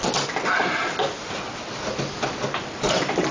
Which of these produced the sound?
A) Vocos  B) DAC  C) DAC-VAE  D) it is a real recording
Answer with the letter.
D